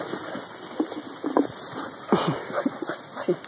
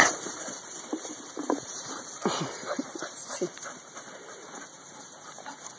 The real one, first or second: first